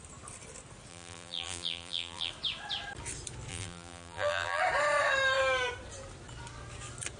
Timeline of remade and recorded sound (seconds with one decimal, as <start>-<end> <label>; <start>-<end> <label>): 0.0-0.9 recorded; 0.9-2.3 remade; 2.3-3.5 recorded; 3.5-4.6 remade; 4.6-7.2 recorded